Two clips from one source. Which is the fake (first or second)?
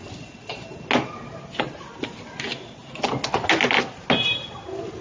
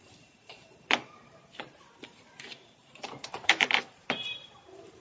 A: second